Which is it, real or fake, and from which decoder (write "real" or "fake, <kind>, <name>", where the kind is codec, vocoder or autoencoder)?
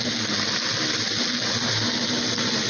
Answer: real